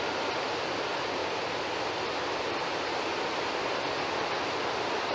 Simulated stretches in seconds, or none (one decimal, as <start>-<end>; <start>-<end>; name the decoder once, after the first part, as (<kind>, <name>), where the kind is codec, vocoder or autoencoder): none